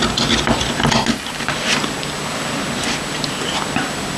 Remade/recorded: recorded